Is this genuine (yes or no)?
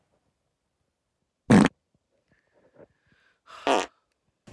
yes